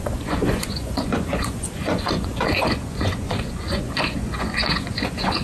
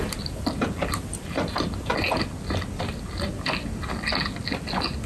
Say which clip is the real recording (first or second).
second